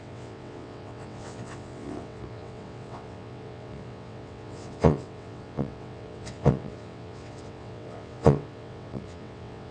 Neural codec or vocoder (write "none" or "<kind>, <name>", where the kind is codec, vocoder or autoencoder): vocoder, WaveNeXt